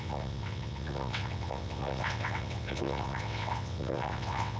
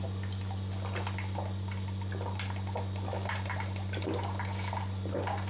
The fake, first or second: first